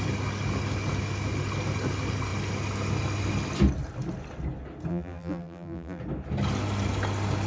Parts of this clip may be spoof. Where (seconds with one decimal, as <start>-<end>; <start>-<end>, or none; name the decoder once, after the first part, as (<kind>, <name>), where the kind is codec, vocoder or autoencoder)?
4.9-6.0 (vocoder, BigVGAN v2)

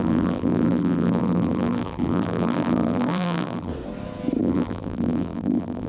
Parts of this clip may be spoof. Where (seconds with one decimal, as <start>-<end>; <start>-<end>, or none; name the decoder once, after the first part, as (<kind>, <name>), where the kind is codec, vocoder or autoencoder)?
0.0-3.7 (vocoder, BigVGAN v2); 4.4-5.9

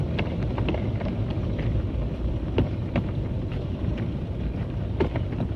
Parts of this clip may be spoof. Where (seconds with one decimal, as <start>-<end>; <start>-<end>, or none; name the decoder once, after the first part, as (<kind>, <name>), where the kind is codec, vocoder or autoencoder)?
1.4-4.8 (vocoder, BigVGAN v2)

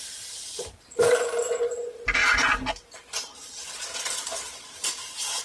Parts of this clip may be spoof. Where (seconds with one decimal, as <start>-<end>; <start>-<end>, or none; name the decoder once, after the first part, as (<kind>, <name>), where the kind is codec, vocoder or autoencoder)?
none

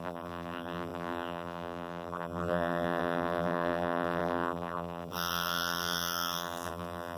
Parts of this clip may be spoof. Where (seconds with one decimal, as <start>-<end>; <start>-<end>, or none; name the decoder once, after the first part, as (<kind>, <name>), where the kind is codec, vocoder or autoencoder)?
0.0-7.2 (vocoder, BigVGAN v2)

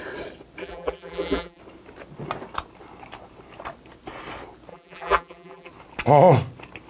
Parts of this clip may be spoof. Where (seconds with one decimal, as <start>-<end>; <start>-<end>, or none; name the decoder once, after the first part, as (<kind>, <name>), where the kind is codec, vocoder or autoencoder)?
0.6-1.6 (vocoder, BigVGAN v2); 4.7-5.7